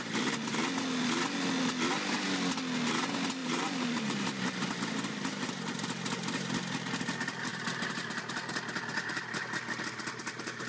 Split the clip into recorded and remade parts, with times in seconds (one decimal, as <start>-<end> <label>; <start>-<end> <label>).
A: 0.0-3.4 recorded; 3.4-4.4 remade; 4.4-7.5 recorded; 7.5-8.2 remade; 8.2-8.9 recorded; 8.9-10.7 remade